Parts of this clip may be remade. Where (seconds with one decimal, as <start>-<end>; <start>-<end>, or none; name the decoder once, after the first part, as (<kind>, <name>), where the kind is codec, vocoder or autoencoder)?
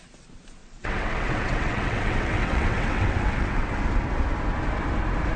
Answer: 0.6-3.8 (vocoder, WaveNeXt)